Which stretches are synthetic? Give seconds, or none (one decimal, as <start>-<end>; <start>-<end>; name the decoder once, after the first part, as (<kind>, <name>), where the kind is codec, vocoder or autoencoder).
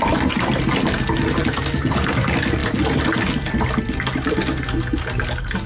none